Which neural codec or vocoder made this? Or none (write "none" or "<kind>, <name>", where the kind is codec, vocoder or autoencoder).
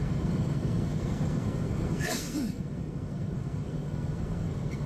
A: codec, SNAC